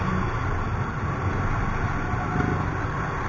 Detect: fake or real real